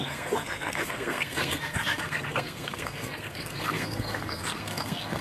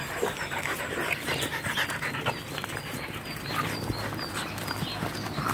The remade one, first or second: first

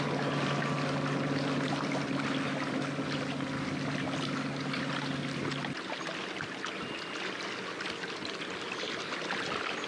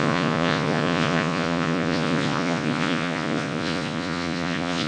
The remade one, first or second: second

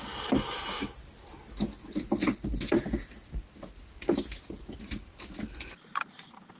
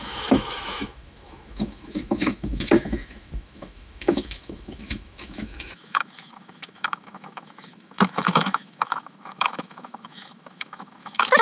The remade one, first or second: second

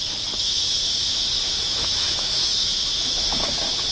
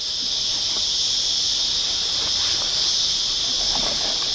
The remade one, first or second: first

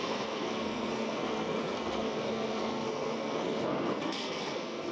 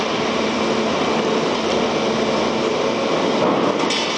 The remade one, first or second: first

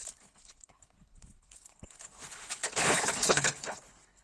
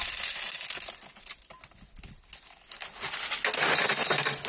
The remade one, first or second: first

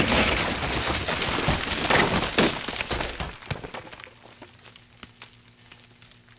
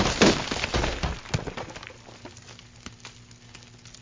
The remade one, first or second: second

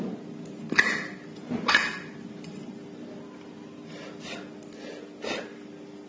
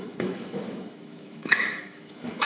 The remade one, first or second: second